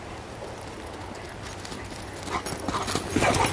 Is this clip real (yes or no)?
yes